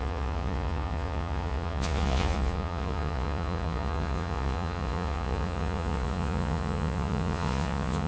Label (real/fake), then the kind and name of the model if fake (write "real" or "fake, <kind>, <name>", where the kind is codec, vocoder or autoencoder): fake, vocoder, Vocos